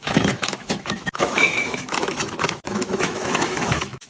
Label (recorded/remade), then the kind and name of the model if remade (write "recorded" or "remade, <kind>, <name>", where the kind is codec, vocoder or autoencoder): remade, autoencoder, DAC-VAE